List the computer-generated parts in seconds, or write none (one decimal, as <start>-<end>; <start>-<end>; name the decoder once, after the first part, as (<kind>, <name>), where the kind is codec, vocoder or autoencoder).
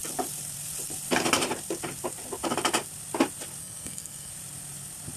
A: 3.6-4.3 (codec, SNAC)